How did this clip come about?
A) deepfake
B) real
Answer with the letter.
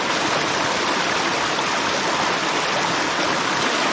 B